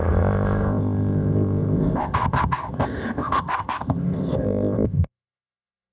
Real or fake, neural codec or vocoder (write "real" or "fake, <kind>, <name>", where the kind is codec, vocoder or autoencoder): fake, codec, ZipCodec